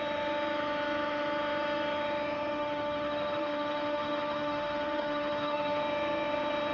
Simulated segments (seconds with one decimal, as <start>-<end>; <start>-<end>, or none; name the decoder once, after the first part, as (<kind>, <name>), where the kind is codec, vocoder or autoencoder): 2.5-5.8 (autoencoder, DAC-VAE)